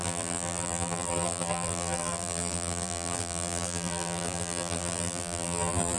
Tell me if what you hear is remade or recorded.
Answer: remade